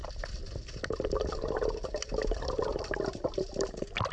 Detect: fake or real real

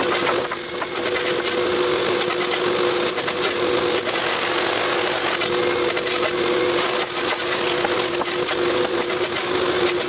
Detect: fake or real real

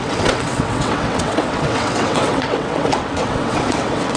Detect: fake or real fake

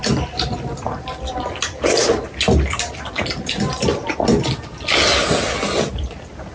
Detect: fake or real real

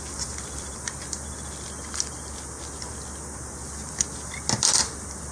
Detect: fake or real real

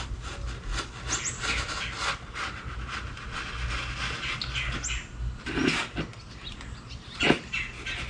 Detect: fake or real real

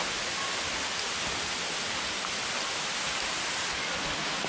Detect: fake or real real